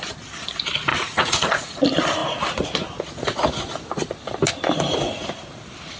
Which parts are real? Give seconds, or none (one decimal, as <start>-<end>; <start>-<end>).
0.0-0.9; 1.8-6.0